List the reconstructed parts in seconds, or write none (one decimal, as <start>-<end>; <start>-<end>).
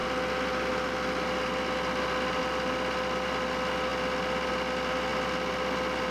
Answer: none